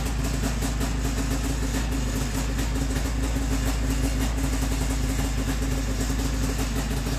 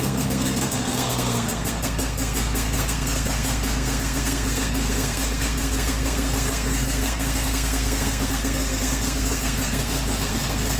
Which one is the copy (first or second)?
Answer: second